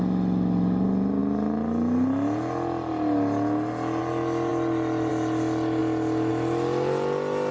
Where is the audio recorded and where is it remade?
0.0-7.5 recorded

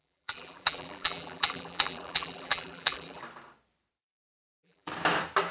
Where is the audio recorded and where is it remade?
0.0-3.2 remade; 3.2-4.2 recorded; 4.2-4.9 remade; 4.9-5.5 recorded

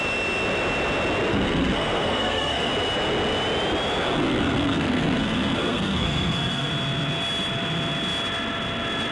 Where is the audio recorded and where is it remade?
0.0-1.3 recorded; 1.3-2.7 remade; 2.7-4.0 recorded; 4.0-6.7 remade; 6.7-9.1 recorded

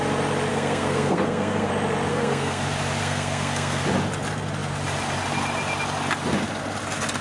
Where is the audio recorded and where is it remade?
0.0-0.5 recorded; 0.5-1.7 remade; 1.7-2.1 recorded; 2.1-2.6 remade; 2.6-3.0 recorded; 3.0-3.8 remade; 3.8-7.2 recorded